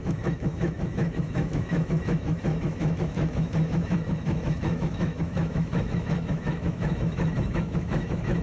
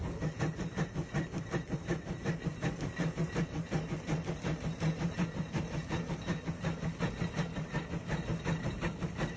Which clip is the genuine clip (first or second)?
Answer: second